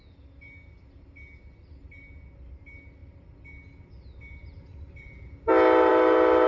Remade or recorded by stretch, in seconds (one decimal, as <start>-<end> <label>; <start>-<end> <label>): 0.0-6.5 recorded